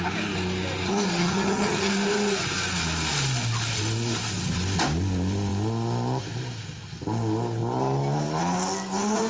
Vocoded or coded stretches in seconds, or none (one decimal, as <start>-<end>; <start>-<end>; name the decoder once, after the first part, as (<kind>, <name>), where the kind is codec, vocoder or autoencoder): 1.2-1.9 (vocoder, HiFi-GAN)